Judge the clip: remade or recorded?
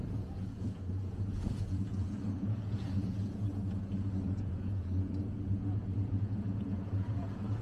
remade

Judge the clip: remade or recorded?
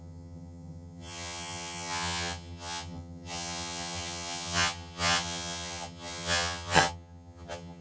remade